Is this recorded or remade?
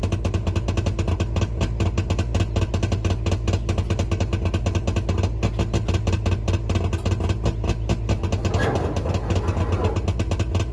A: recorded